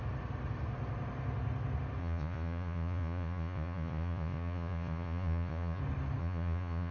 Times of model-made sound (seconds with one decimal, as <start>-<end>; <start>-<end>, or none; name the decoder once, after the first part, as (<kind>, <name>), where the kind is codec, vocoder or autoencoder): 2.0-5.8 (vocoder, Vocos); 6.2-6.9

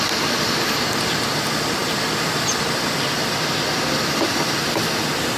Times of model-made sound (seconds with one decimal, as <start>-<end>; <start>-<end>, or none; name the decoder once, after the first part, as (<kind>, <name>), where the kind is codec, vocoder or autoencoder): none

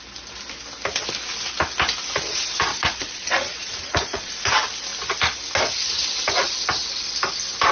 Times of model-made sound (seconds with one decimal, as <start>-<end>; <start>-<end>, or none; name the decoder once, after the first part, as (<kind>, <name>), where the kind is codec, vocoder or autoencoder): 2.7-4.3 (vocoder, Vocos)

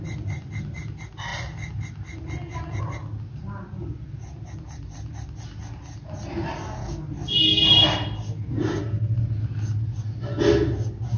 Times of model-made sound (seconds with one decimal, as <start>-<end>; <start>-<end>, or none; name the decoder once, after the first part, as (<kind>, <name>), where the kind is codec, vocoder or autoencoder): none

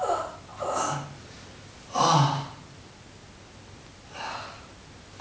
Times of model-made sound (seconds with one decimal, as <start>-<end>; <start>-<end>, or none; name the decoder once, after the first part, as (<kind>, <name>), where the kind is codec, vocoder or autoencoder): none

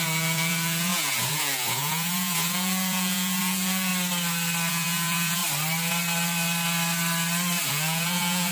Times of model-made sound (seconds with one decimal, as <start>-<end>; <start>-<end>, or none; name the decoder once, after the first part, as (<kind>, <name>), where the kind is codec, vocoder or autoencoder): 0.0-3.9 (vocoder, Vocos); 4.7-5.4; 7.7-8.5